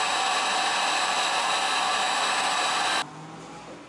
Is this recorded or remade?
recorded